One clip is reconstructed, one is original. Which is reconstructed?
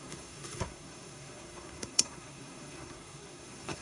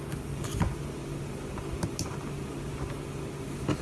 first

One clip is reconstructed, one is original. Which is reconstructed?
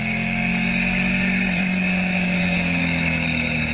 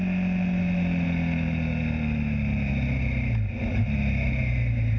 first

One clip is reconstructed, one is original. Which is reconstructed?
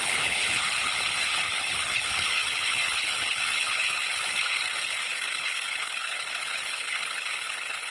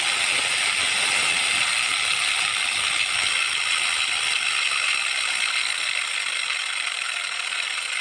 first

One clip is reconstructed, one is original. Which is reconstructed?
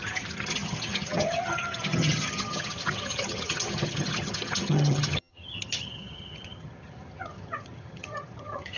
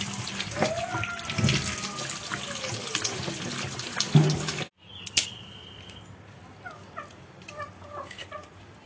first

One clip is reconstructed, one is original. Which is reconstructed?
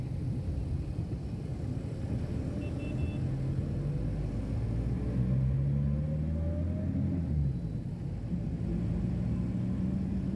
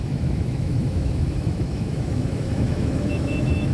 second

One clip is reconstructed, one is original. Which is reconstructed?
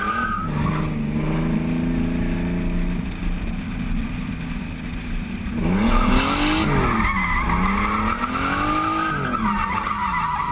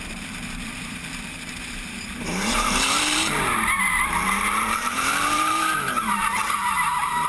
second